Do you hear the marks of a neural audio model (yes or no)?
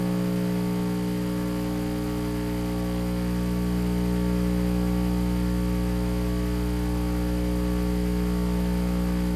no